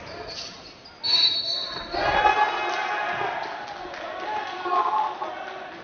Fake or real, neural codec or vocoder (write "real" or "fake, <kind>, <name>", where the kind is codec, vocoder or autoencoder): real